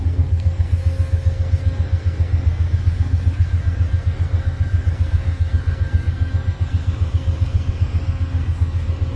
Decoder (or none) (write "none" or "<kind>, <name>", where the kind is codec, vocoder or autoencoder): codec, SNAC